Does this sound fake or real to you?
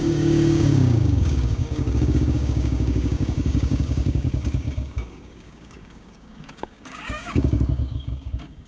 fake